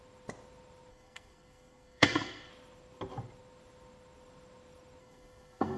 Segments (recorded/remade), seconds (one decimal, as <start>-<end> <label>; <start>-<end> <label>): 0.0-0.9 recorded; 0.9-2.5 remade; 2.5-5.0 recorded; 5.0-5.8 remade